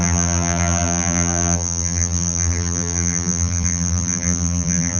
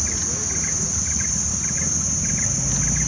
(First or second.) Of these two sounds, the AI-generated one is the first